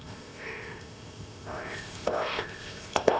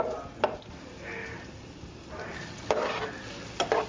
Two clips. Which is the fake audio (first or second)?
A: first